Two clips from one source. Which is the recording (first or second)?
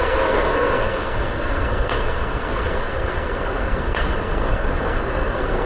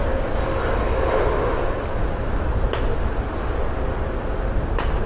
second